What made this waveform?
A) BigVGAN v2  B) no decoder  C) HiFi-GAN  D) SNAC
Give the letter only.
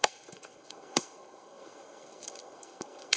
D